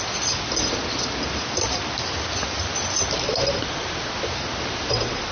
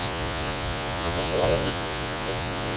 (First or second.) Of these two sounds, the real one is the first